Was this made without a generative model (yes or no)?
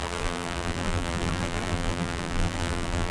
no